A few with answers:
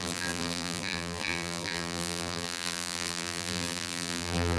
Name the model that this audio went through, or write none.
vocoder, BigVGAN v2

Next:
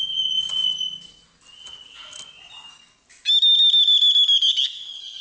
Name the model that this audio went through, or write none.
none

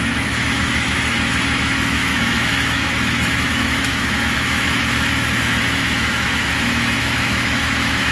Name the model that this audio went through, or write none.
autoencoder, DAC-VAE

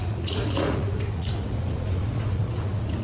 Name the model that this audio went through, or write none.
vocoder, Vocos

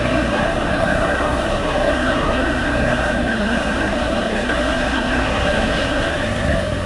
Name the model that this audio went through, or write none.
codec, SNAC